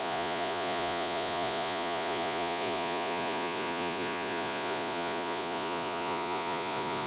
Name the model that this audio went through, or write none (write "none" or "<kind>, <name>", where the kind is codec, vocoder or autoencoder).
vocoder, Vocos